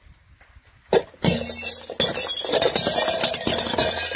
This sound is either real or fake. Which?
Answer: real